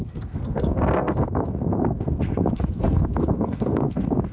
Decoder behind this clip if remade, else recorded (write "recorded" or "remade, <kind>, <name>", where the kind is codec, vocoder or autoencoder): remade, codec, SNAC